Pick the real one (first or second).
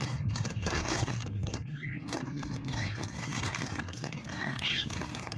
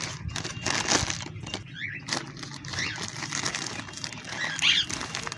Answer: second